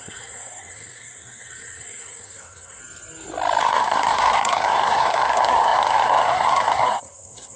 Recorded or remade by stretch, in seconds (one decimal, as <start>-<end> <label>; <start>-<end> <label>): 0.0-2.8 remade; 2.8-3.6 recorded; 3.6-7.6 remade